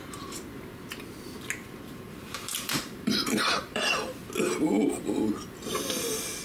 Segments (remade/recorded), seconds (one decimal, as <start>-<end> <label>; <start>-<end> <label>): 0.0-2.2 recorded; 2.2-3.9 remade; 3.9-6.4 recorded